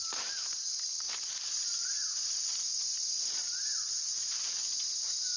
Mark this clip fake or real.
real